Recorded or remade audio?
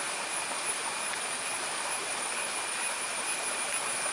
recorded